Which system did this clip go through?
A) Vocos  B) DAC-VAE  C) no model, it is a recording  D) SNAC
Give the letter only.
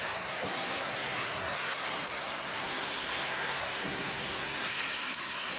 D